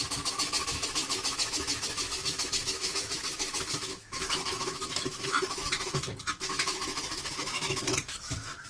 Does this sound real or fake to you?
fake